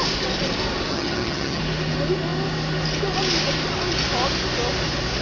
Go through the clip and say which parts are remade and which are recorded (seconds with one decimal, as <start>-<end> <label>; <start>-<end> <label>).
0.0-0.9 recorded; 0.9-1.6 remade; 1.6-5.2 recorded